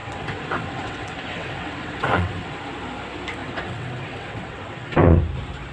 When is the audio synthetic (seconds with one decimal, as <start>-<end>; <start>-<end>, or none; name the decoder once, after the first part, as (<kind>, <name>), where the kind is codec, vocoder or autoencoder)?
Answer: 0.0-2.6 (vocoder, WaveNeXt); 3.4-5.2